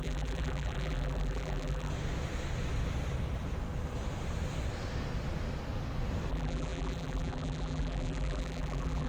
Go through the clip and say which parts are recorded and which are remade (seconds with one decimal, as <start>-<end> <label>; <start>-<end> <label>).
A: 0.0-1.9 remade; 1.9-6.3 recorded; 6.3-9.1 remade

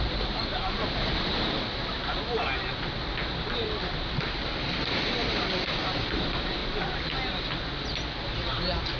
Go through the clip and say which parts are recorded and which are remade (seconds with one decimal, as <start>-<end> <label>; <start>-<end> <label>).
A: 0.0-0.5 recorded; 0.5-1.0 remade; 1.0-9.0 recorded

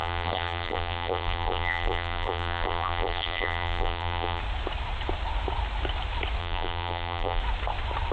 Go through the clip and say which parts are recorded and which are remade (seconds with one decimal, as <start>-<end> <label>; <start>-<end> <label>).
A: 0.0-4.4 remade; 4.4-6.4 recorded; 6.4-7.4 remade; 7.4-8.1 recorded